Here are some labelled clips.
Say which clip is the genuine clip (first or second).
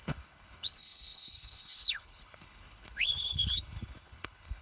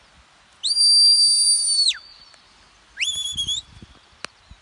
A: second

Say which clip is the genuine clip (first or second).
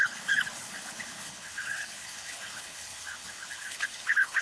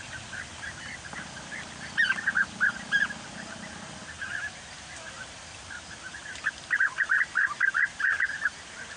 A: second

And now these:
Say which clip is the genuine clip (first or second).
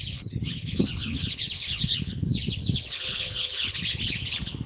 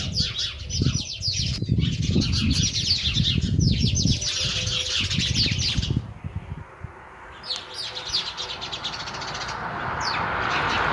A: second